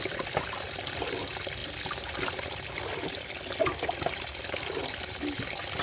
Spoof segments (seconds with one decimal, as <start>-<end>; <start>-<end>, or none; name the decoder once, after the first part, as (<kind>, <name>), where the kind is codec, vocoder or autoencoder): none